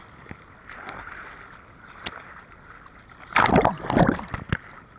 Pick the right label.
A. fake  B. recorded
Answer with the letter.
B